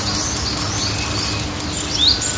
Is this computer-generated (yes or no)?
no